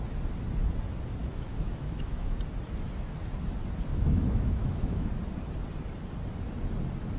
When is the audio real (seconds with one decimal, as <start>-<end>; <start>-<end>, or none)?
0.0-1.2; 2.3-3.9; 5.1-7.2